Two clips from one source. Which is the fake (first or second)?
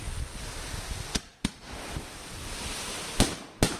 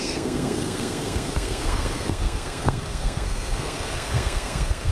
second